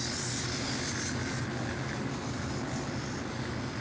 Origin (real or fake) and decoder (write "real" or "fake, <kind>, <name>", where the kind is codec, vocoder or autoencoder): real